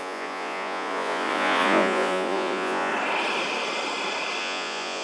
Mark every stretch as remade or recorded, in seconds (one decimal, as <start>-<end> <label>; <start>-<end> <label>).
0.0-2.9 remade; 2.9-4.4 recorded; 4.4-5.0 remade